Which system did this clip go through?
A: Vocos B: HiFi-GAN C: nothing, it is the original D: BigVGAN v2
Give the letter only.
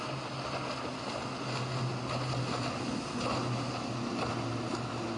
C